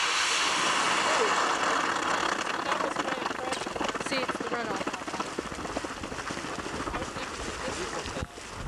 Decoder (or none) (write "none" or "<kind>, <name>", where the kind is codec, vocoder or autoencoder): none